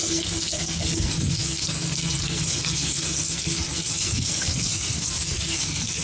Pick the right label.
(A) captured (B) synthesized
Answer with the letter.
B